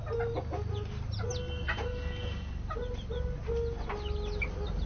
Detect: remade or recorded recorded